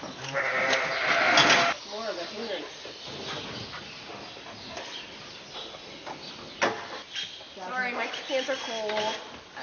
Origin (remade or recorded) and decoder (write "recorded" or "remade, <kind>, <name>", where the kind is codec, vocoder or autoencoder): recorded